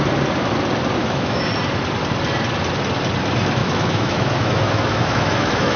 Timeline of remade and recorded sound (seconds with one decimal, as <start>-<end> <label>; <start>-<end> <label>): 0.0-1.0 recorded; 1.0-1.5 remade; 1.5-3.6 recorded; 3.6-5.8 remade